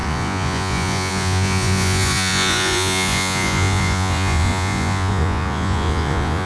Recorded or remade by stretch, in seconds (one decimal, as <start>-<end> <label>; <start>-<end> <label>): 0.0-6.5 remade